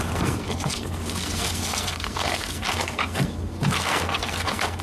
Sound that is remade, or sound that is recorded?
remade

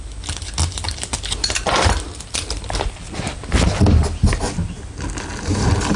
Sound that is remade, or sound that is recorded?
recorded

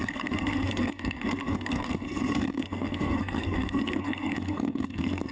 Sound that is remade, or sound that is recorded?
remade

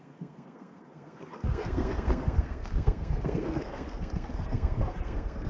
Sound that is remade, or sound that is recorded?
remade